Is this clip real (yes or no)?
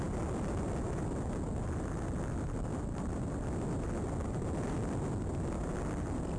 yes